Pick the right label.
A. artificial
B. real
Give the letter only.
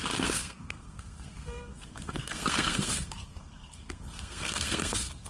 A